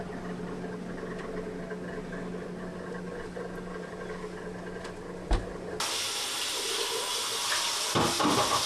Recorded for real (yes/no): yes